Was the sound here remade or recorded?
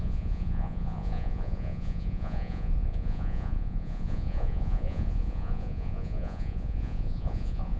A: remade